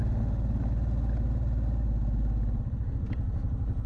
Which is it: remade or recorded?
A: recorded